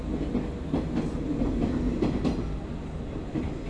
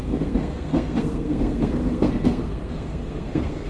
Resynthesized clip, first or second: second